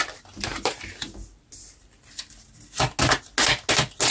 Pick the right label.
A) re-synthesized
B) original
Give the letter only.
B